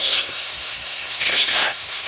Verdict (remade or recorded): remade